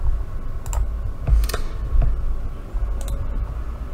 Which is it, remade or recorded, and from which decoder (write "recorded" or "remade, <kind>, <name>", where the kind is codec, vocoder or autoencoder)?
recorded